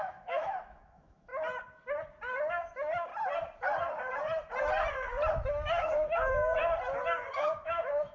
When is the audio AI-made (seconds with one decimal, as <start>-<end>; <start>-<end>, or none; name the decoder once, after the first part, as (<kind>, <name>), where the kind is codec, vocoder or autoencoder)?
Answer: 0.0-1.3 (autoencoder, DAC-VAE); 2.5-3.1; 5.3-6.6; 7.3-8.1